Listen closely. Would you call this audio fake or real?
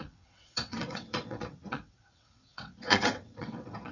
fake